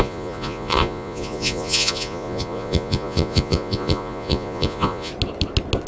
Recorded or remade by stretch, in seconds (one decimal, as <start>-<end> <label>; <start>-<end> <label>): 0.0-5.1 remade; 5.1-5.9 recorded